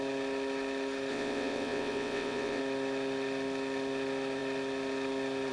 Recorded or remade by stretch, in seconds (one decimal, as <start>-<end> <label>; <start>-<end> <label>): 0.0-1.1 recorded; 1.1-2.6 remade; 2.6-5.5 recorded